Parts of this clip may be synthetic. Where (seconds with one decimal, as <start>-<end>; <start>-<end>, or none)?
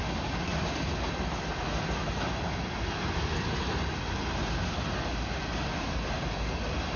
none